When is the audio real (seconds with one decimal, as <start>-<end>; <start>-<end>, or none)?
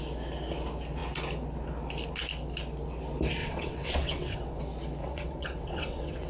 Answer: 0.0-3.4; 4.6-5.0